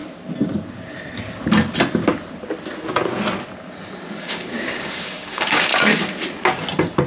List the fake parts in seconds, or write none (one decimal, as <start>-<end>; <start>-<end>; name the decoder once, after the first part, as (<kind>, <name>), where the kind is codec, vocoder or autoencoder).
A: 4.2-5.7 (codec, DAC)